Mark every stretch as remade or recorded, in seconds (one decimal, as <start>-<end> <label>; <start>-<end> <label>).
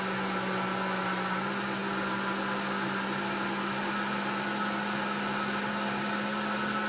0.0-6.9 recorded